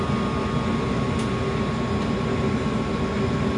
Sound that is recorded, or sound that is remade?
recorded